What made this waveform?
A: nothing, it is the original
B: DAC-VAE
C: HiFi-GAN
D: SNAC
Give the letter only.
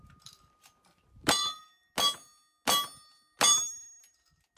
A